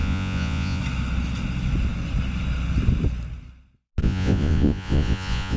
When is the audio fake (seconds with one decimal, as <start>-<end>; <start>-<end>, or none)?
0.0-0.8; 4.0-5.6